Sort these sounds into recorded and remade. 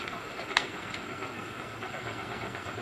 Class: remade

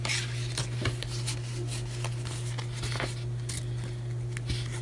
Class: recorded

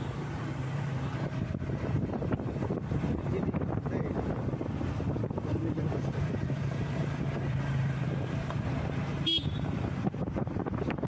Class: remade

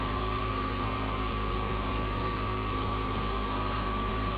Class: remade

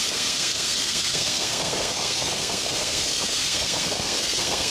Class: remade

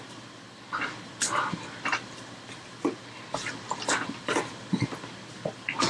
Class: recorded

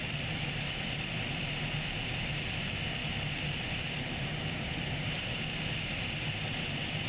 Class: recorded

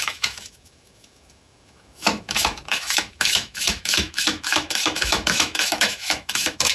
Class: remade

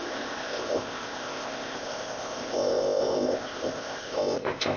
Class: remade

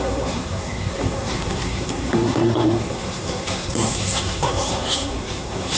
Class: remade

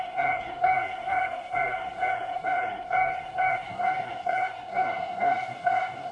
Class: remade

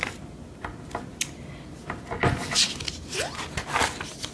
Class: recorded